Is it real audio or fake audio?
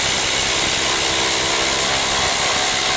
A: real